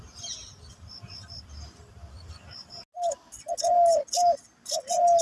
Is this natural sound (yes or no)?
yes